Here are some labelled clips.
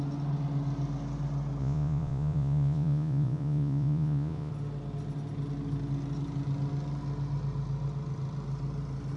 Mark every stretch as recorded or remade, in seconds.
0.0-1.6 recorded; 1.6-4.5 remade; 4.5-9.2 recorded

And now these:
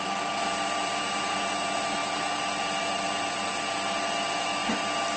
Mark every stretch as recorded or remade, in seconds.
0.0-5.2 recorded

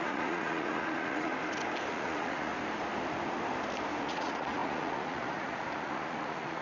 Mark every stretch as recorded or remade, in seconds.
0.0-1.3 remade; 1.3-1.9 recorded; 1.9-2.5 remade; 2.5-4.0 recorded; 4.0-6.6 remade

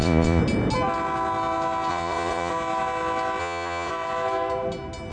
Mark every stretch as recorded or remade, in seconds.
0.0-0.4 remade; 0.4-1.9 recorded; 1.9-2.5 remade; 2.5-3.4 recorded; 3.4-3.9 remade; 3.9-5.1 recorded